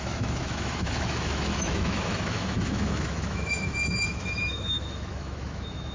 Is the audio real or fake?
fake